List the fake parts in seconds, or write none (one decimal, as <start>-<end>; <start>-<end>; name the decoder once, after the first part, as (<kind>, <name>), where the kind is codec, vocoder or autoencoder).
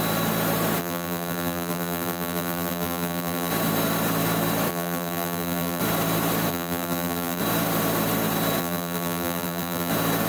0.8-3.5 (vocoder, BigVGAN v2); 4.7-5.8; 6.5-7.4; 8.6-9.9